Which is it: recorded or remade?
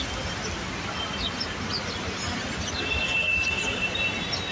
recorded